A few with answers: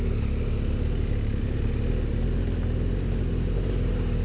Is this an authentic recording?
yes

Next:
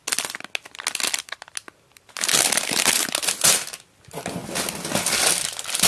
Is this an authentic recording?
yes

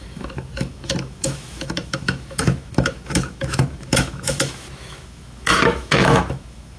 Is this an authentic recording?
no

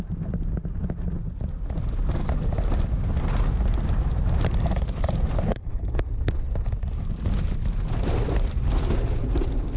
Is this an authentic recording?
yes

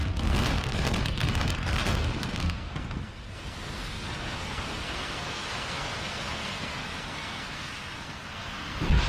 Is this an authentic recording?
no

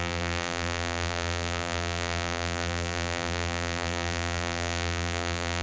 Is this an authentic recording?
no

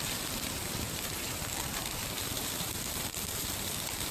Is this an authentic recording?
no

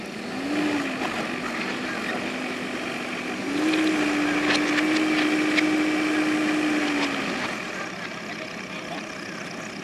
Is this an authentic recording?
yes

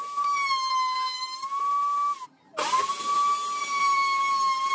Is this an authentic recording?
yes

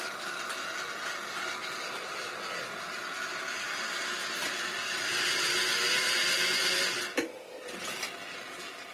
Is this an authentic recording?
yes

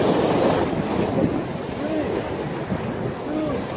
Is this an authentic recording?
yes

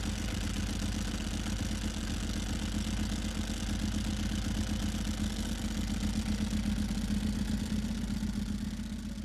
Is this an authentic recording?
yes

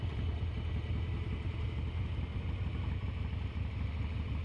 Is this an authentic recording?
yes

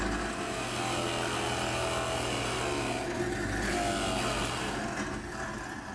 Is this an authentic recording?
yes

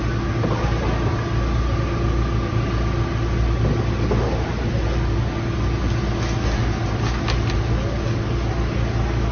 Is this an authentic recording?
yes